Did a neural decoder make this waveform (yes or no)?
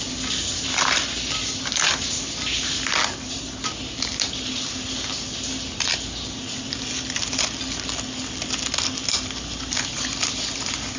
no